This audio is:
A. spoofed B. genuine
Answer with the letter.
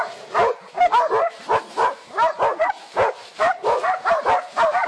B